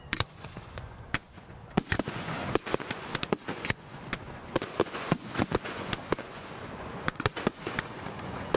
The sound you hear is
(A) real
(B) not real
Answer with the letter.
B